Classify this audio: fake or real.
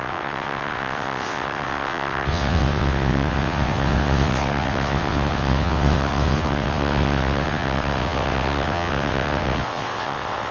fake